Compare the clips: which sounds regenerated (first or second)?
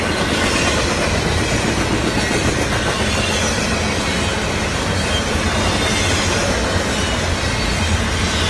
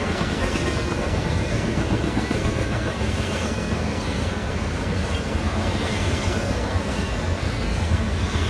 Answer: second